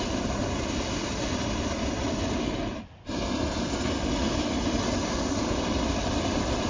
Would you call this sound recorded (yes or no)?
yes